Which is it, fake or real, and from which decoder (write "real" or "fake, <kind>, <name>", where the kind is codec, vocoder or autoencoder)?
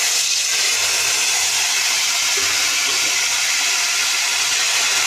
real